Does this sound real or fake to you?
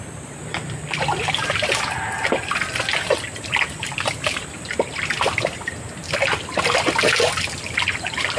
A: real